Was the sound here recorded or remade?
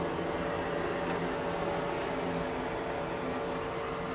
recorded